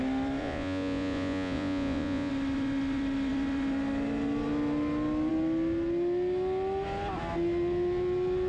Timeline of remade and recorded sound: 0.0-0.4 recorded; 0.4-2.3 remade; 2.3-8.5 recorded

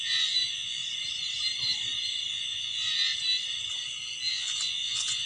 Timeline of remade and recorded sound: 0.0-0.8 remade; 0.8-2.3 recorded; 2.3-3.1 remade; 3.1-4.3 recorded; 4.3-5.2 remade

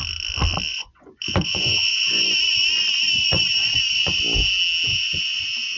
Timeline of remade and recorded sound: 0.0-0.7 recorded; 0.7-4.2 remade; 4.2-4.9 recorded; 4.9-5.8 remade

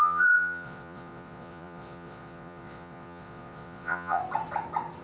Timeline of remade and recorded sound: 0.0-4.2 remade; 4.2-5.0 recorded

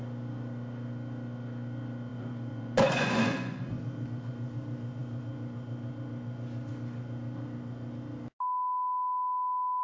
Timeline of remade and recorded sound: 0.0-2.1 recorded; 2.1-3.7 remade; 3.7-9.8 recorded

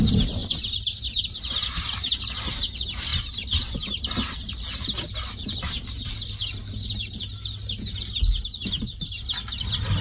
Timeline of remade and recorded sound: 0.0-10.0 recorded